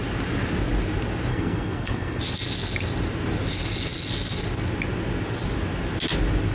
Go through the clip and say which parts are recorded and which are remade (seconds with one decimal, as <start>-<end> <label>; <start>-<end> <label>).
0.0-1.3 recorded; 1.3-2.2 remade; 2.2-6.5 recorded